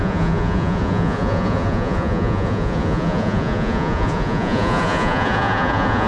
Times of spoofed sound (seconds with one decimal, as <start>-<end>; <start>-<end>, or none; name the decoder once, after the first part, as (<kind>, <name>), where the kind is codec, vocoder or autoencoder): 0.0-6.1 (vocoder, Vocos)